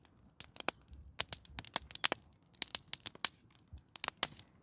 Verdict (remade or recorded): recorded